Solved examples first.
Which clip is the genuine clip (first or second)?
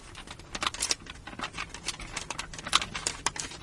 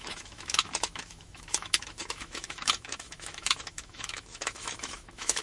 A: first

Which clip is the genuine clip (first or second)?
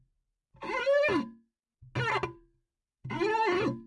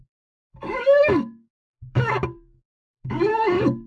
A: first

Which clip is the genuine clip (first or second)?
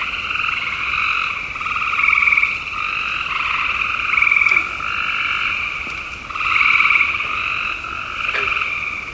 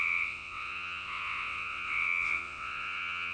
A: first